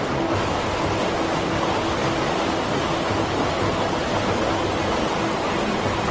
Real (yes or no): yes